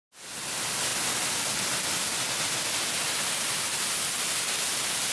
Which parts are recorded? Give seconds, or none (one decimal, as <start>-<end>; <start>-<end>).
0.0-5.1